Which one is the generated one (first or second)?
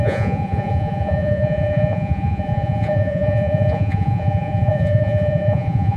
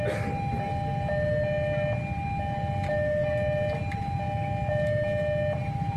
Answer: first